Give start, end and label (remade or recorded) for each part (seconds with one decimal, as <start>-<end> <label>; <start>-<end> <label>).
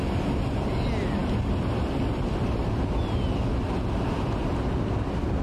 0.0-5.4 recorded